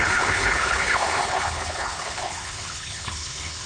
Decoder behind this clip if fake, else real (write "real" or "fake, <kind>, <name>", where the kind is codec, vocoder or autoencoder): fake, codec, HILCodec